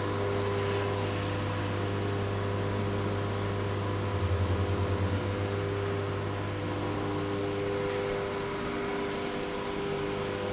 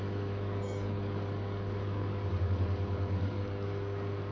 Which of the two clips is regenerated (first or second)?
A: second